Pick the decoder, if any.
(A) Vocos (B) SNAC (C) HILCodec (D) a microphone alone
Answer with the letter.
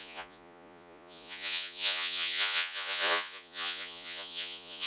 A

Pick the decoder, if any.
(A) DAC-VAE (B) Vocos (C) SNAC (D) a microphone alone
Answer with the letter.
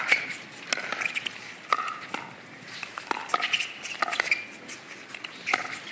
D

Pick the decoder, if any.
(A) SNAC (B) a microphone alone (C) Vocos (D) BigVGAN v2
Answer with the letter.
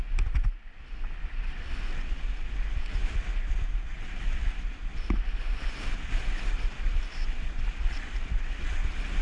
B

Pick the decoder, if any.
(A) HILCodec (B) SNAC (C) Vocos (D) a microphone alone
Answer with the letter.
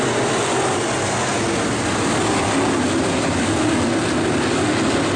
D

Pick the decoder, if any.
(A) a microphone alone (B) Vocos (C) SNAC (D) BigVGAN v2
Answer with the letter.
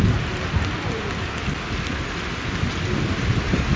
A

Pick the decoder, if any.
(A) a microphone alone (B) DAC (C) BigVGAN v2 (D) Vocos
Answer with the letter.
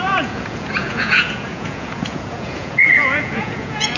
D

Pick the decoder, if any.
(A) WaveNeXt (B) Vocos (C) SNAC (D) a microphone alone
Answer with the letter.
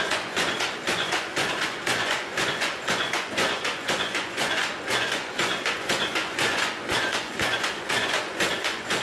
B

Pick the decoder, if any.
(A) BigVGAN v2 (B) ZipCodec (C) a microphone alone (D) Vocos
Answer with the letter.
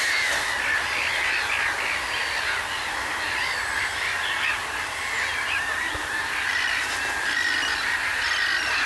C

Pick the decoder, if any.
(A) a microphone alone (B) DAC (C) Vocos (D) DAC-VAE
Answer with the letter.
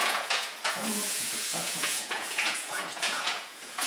C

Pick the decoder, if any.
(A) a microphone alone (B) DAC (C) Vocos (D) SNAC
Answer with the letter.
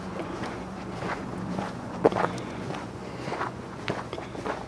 C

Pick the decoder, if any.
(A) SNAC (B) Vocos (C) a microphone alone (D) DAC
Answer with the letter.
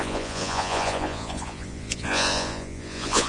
B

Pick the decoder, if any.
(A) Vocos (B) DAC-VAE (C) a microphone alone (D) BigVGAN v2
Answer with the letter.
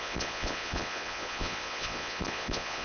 A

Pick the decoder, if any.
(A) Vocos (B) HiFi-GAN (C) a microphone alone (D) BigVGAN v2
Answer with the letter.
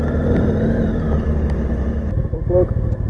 C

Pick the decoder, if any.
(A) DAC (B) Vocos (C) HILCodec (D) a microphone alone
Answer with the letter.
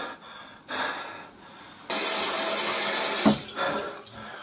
D